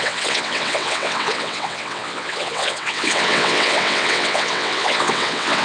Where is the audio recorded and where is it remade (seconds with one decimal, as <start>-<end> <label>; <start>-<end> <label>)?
0.0-5.6 remade